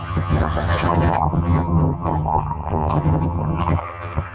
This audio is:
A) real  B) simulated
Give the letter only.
B